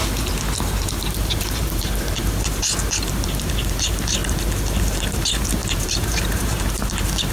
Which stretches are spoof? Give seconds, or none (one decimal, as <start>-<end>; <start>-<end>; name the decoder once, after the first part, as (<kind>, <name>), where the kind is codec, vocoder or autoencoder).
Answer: 0.0-4.2 (vocoder, BigVGAN v2); 4.8-7.3